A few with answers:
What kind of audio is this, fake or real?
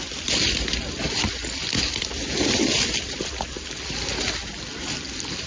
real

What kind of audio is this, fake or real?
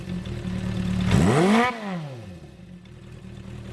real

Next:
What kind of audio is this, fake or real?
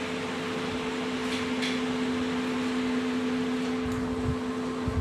real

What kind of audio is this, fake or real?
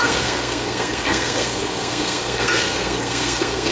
fake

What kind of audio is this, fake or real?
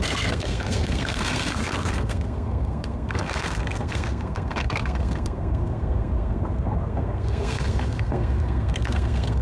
fake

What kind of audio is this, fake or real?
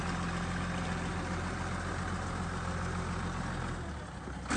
real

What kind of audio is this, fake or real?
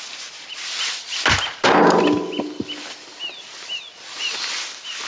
real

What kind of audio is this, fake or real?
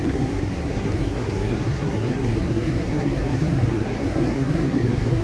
fake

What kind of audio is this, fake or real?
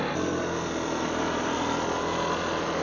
real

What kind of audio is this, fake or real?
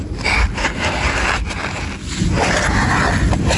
real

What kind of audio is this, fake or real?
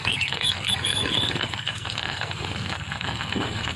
fake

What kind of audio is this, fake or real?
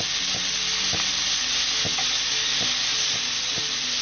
real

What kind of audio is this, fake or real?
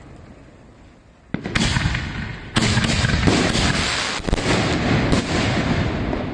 real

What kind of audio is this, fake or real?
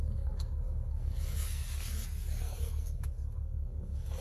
fake